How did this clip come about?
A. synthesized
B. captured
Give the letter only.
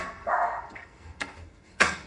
A